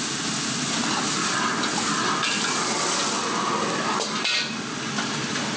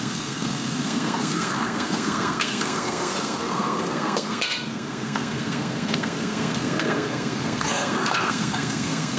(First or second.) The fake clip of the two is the second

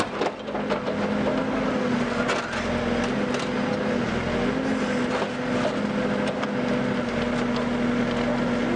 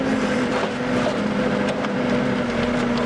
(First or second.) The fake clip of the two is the second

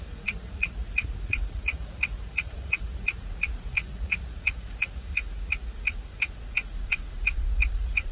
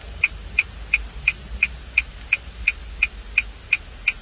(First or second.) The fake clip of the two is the first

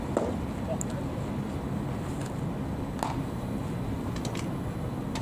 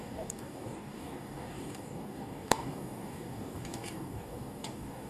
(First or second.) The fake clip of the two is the second